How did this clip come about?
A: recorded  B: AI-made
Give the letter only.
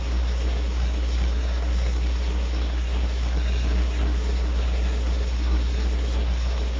B